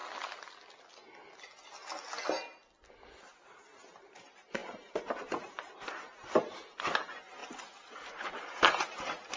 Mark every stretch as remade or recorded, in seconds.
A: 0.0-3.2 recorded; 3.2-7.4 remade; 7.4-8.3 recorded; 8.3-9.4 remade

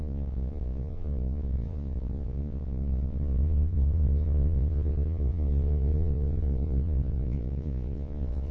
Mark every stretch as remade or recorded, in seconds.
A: 0.0-8.5 remade

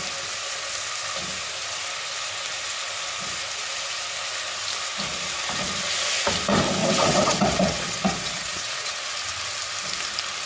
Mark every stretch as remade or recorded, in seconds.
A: 0.0-6.8 recorded; 6.8-9.0 remade; 9.0-10.5 recorded